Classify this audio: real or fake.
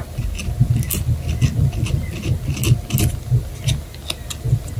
real